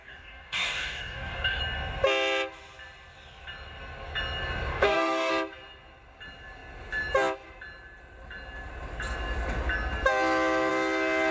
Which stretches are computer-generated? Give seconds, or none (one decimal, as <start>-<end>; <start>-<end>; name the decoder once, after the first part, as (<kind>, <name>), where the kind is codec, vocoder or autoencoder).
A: 0.0-1.6 (codec, DAC); 4.7-5.3

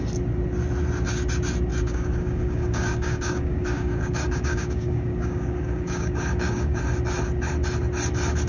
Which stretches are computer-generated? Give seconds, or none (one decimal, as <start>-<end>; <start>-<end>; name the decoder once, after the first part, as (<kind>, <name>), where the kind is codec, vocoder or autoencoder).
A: 1.7-6.8 (codec, DAC)

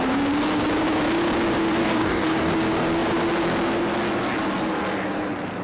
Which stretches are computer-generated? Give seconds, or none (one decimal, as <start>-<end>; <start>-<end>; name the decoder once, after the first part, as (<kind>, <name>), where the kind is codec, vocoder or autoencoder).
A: 1.8-2.5 (codec, DAC)

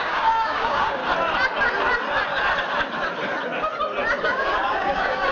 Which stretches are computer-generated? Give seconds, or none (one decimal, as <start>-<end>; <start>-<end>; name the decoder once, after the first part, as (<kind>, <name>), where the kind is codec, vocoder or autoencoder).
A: 0.0-1.0 (codec, DAC); 4.2-5.3

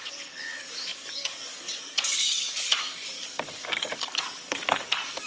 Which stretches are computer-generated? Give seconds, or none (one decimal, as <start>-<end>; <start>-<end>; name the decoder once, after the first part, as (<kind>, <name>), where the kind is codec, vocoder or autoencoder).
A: 0.0-5.3 (codec, DAC)

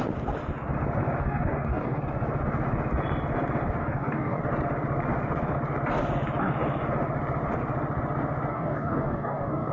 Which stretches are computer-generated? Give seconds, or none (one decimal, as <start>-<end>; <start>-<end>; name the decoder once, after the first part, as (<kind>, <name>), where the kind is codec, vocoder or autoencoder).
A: 1.2-2.0 (codec, DAC); 3.8-4.4; 8.5-9.7

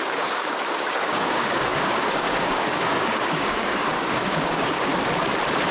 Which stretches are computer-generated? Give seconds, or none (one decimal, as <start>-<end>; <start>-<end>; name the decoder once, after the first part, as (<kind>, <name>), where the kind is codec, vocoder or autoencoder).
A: 0.0-4.9 (codec, DAC)